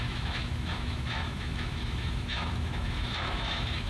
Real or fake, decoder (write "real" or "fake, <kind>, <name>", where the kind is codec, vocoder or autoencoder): fake, autoencoder, DAC-VAE